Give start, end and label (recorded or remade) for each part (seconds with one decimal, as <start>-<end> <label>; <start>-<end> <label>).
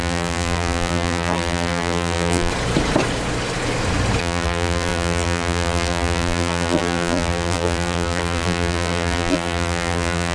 0.0-2.5 remade; 2.5-4.2 recorded; 4.2-10.3 remade